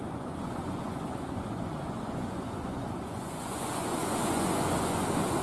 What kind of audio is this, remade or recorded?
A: remade